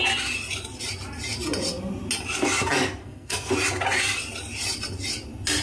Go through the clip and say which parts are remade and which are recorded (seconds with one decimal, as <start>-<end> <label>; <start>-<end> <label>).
0.0-3.0 recorded; 3.0-3.5 remade; 3.5-5.6 recorded